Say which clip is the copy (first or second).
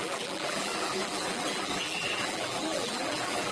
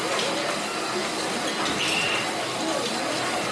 first